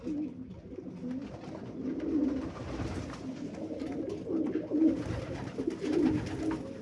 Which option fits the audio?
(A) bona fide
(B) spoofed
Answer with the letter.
A